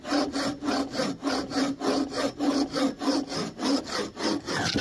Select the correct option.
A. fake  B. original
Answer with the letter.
B